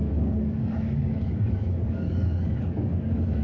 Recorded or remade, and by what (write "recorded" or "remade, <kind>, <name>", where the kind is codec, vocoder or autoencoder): remade, codec, DAC